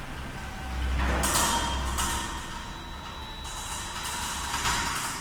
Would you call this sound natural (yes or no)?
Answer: yes